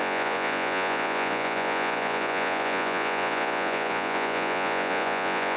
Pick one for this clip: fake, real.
fake